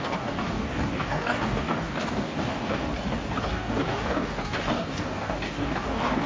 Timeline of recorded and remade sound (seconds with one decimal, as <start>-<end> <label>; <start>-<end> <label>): 0.0-2.9 remade; 2.9-3.5 recorded; 3.5-6.3 remade